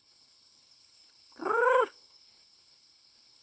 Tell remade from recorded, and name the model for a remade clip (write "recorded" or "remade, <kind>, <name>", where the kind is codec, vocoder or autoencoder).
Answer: remade, codec, HILCodec